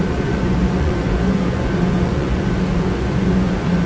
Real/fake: fake